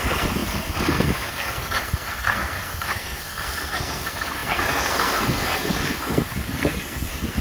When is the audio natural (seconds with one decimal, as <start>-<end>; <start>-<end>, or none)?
none